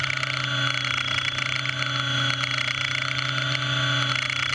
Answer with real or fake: real